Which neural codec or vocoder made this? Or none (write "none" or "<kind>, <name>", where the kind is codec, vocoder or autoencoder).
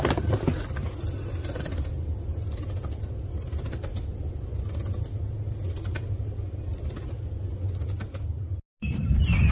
none